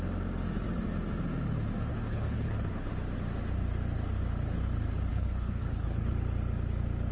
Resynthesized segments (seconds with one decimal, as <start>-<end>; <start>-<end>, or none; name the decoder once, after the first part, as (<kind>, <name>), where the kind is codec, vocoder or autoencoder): 1.9-2.9 (codec, HILCodec); 5.1-6.1